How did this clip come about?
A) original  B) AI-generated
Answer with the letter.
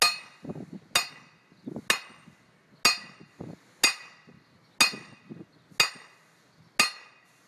A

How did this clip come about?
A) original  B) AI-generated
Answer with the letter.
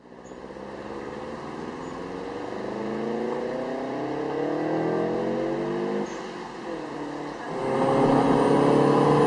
A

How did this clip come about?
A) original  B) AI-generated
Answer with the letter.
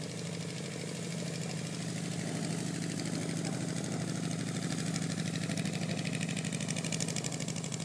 A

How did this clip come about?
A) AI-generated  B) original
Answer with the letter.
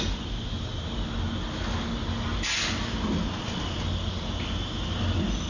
B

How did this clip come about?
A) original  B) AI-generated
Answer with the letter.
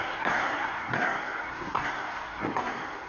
B